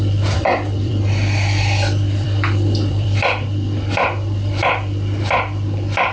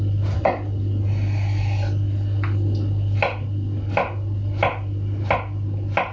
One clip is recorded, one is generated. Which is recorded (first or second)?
second